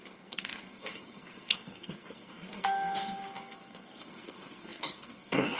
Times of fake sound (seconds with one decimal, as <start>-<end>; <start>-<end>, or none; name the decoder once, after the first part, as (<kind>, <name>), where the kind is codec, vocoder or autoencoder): 0.0-5.6 (codec, SNAC)